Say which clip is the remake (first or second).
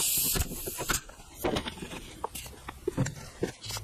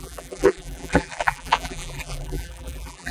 second